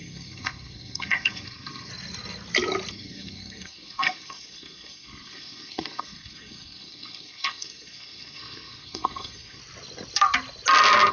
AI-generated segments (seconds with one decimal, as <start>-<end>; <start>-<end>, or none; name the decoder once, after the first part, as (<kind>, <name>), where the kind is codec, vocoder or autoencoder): 0.0-1.9 (codec, SNAC); 2.9-9.6